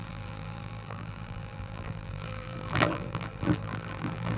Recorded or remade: remade